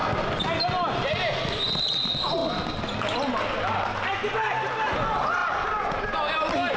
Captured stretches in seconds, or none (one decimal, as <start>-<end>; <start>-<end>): 0.0-6.8